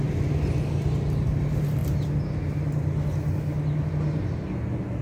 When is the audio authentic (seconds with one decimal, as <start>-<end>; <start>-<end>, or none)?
0.0-5.0